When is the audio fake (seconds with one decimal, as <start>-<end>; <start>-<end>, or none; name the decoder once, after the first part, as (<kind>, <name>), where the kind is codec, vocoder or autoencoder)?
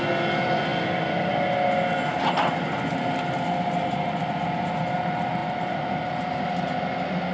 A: none